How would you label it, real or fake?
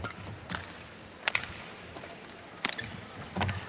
real